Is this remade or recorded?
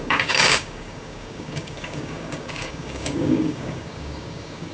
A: remade